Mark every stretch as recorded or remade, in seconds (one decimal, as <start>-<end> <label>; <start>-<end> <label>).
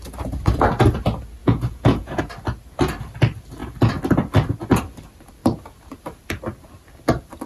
0.0-1.4 recorded; 1.4-2.2 remade; 2.2-7.5 recorded